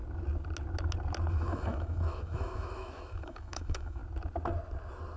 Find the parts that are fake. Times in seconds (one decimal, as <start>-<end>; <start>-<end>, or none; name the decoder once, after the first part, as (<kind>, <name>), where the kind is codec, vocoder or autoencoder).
1.3-4.0 (autoencoder, DAC-VAE)